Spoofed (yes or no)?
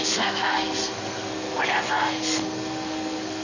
yes